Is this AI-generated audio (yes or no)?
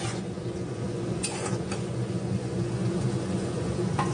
yes